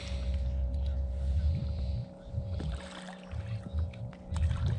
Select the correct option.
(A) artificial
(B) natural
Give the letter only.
B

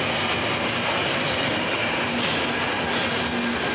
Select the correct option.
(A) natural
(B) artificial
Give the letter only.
A